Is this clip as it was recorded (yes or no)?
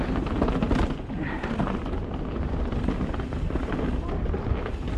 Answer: yes